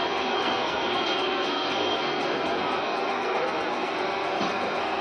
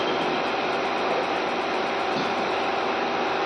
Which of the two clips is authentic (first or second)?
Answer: second